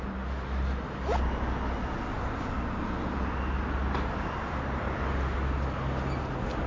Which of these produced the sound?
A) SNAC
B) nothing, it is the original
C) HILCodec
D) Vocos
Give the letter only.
B